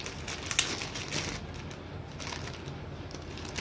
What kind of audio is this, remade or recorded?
recorded